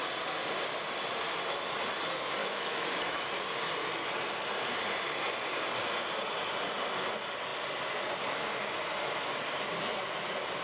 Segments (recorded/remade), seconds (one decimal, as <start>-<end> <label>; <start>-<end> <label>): 0.0-2.4 recorded; 2.4-3.2 remade; 3.2-10.6 recorded